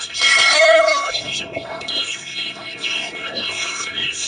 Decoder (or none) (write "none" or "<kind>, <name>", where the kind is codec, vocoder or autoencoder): codec, SNAC